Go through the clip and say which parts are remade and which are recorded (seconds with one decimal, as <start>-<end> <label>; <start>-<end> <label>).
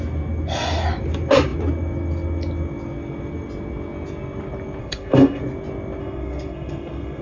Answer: 0.0-4.8 recorded; 4.8-5.4 remade; 5.4-6.0 recorded; 6.0-7.2 remade